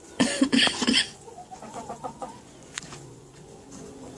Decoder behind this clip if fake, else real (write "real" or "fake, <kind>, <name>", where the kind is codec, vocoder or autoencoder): fake, vocoder, Vocos